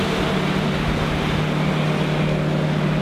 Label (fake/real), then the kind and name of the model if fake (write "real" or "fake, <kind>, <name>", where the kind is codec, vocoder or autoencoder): real